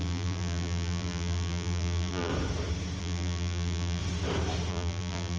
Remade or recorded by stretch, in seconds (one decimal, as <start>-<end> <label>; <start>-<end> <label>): 0.0-2.3 remade; 2.3-3.0 recorded; 3.0-4.0 remade; 4.0-4.7 recorded; 4.7-5.4 remade